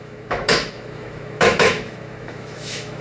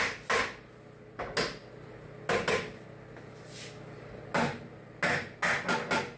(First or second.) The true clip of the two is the second